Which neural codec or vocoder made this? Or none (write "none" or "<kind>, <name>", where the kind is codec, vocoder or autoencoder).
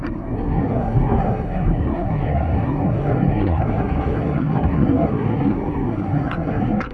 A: codec, SNAC